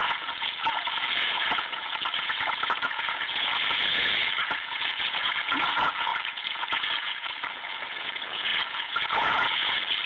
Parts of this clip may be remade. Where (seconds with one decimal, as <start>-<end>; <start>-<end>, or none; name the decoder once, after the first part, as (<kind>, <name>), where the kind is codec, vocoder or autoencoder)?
0.0-10.1 (vocoder, Vocos)